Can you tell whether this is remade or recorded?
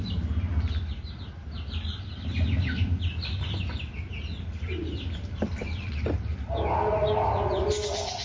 recorded